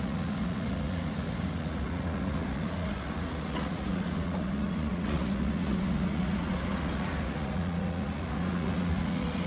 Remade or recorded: remade